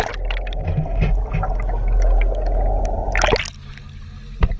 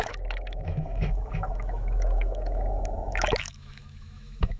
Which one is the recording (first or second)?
first